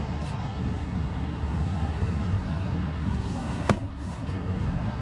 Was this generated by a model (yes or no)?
yes